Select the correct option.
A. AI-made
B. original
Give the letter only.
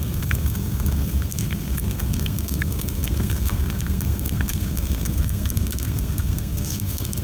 A